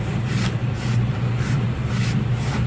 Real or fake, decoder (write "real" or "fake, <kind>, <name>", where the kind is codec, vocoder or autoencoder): real